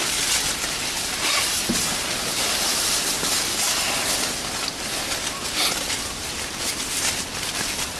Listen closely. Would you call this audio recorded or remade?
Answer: recorded